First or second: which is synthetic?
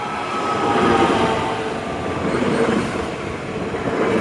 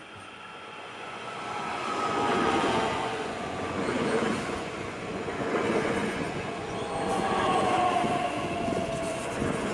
second